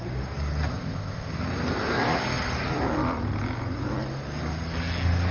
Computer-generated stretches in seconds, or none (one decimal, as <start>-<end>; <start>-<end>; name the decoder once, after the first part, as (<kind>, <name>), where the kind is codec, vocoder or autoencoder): 0.7-1.3 (codec, ZipCodec)